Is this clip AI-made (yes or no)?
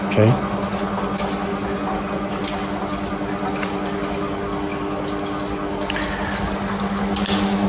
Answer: no